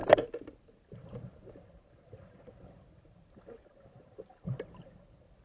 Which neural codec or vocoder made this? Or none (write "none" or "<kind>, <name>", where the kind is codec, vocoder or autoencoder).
none